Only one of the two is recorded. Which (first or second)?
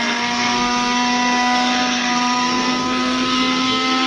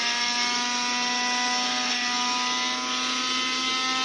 second